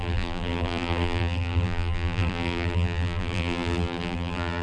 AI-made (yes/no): yes